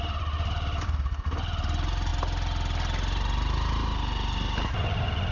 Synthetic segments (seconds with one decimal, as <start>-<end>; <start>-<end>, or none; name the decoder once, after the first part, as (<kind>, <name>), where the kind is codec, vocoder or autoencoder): none